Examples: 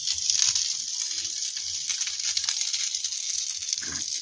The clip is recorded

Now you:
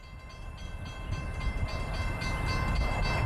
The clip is recorded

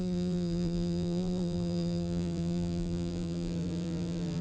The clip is remade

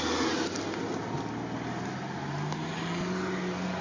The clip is recorded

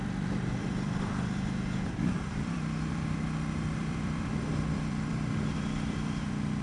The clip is remade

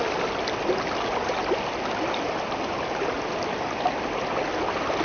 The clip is recorded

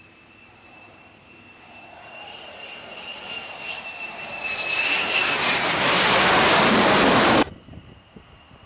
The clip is remade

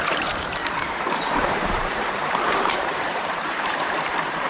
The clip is remade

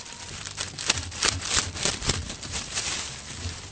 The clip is remade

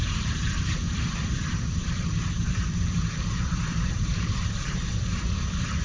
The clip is remade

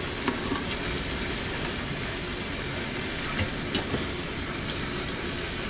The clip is recorded